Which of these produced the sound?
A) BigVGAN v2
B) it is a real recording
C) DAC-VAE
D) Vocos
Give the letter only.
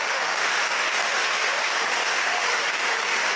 C